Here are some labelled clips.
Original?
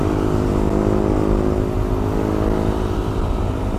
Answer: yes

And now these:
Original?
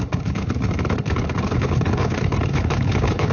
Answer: no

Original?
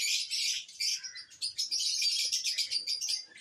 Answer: yes